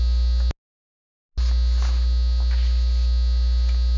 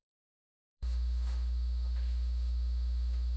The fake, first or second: second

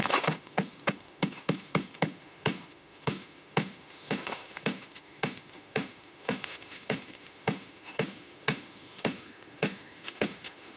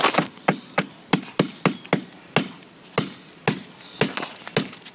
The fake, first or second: first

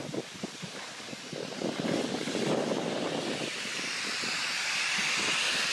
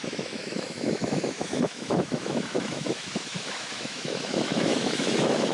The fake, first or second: second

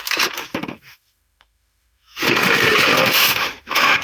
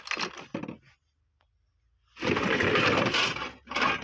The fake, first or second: first